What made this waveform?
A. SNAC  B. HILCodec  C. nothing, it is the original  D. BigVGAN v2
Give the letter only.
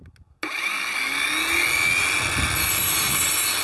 C